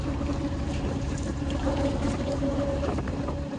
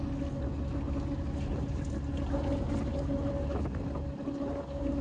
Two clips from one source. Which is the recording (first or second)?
second